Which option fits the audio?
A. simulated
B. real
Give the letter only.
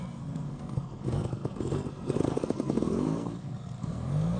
A